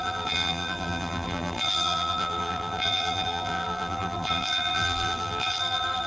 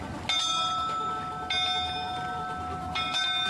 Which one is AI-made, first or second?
first